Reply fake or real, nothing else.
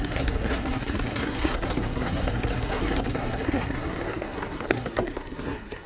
fake